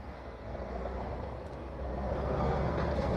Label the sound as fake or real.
fake